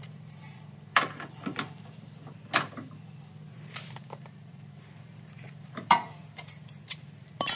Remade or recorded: remade